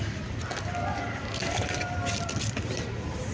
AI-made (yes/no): no